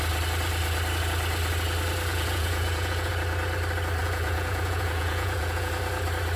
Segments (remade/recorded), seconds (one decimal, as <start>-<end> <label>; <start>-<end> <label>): 0.0-2.1 recorded; 2.1-3.1 remade; 3.1-4.0 recorded; 4.0-5.7 remade; 5.7-6.4 recorded